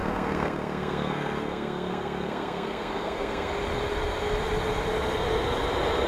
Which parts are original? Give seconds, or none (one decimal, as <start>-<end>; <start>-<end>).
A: 3.5-6.1